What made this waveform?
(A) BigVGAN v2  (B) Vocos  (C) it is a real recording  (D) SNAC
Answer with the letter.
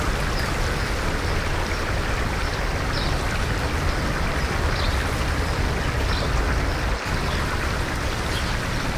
C